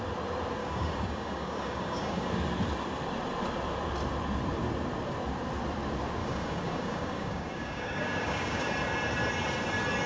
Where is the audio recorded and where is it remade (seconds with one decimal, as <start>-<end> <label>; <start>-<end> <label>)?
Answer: 0.0-0.6 recorded; 0.6-2.3 remade; 2.3-6.2 recorded; 6.2-8.7 remade; 8.7-10.1 recorded